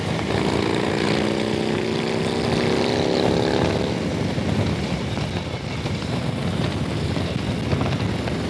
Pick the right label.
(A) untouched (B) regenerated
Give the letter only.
A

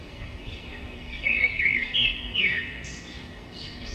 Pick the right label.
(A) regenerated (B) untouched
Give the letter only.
A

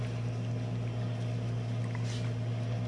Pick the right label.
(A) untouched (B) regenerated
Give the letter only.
A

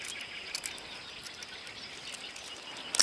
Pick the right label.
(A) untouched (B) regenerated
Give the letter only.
A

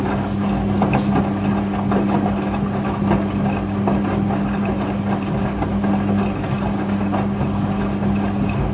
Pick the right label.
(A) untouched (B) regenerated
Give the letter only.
A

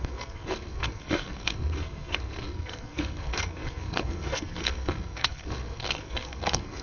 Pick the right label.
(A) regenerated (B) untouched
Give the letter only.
A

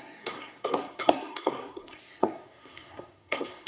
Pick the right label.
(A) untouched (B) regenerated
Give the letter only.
B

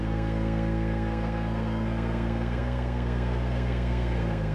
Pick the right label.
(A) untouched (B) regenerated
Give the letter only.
B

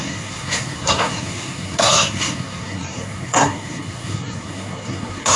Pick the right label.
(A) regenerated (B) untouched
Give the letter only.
A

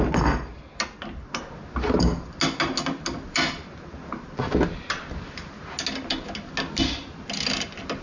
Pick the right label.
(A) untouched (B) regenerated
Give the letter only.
A